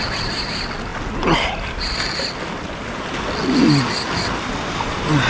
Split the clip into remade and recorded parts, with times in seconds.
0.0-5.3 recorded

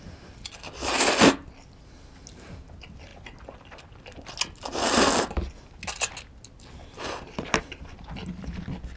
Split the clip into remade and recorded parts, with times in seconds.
0.0-9.0 recorded

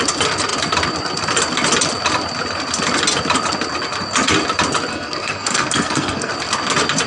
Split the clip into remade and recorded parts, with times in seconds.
0.0-4.9 recorded; 4.9-6.3 remade; 6.3-7.1 recorded

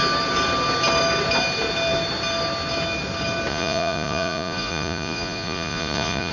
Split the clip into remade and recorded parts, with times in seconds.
0.0-3.5 recorded; 3.5-6.3 remade

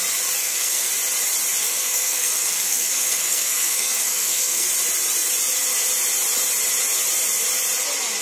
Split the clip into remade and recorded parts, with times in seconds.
0.0-0.4 recorded; 0.4-0.9 remade; 0.9-1.6 recorded; 1.6-4.7 remade; 4.7-8.2 recorded

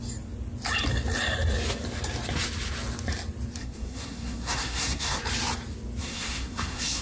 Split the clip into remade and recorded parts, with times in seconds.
0.0-3.6 recorded; 3.6-5.2 remade; 5.2-6.0 recorded; 6.0-7.0 remade

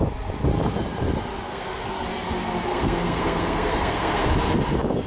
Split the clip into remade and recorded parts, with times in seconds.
0.0-1.5 recorded; 1.5-2.0 remade; 2.0-2.7 recorded; 2.7-4.3 remade; 4.3-5.1 recorded